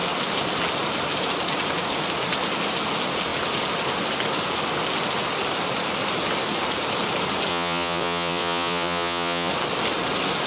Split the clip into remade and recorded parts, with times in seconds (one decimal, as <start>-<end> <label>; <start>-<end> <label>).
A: 0.0-7.5 recorded; 7.5-9.5 remade; 9.5-10.5 recorded